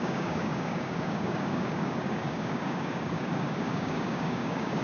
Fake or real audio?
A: fake